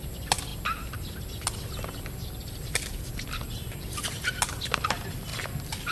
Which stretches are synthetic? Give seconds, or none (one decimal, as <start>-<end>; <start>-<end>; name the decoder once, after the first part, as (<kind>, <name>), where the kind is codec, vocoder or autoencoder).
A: none